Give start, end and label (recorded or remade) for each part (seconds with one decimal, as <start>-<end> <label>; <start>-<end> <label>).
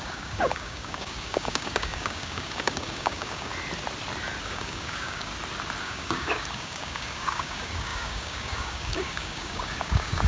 0.0-3.5 remade; 3.5-4.4 recorded; 4.4-5.3 remade; 5.3-5.8 recorded; 5.8-10.3 remade